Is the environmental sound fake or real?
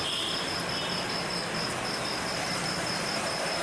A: real